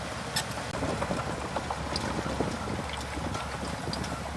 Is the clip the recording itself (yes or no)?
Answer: yes